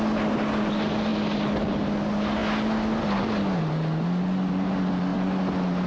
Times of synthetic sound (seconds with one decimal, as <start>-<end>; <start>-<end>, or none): none